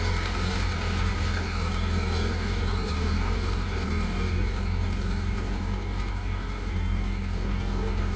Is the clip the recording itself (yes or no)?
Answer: no